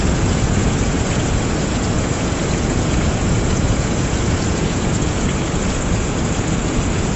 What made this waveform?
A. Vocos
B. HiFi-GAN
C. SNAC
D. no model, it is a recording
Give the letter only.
A